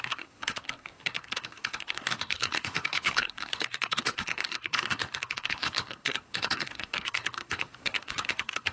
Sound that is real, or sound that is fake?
fake